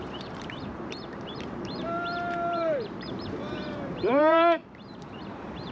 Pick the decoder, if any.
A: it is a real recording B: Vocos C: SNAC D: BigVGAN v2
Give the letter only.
D